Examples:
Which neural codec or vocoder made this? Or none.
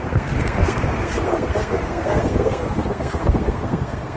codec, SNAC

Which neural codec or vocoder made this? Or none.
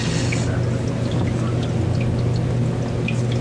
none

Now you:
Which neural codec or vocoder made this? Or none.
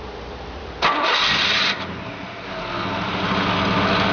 none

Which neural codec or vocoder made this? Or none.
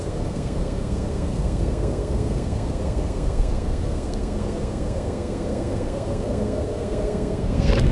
codec, SNAC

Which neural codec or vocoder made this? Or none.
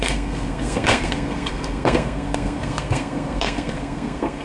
codec, SNAC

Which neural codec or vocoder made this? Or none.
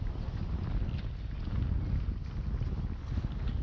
none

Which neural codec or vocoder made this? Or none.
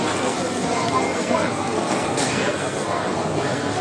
codec, SNAC